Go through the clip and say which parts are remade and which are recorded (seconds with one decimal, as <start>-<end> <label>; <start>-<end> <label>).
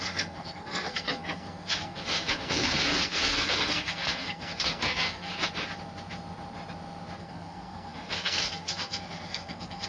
0.0-5.3 remade; 5.3-7.2 recorded; 7.2-9.9 remade